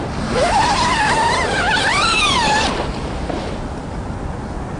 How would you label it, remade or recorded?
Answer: recorded